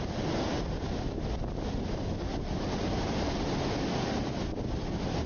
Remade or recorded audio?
recorded